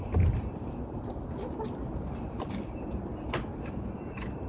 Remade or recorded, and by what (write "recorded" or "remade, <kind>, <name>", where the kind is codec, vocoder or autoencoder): recorded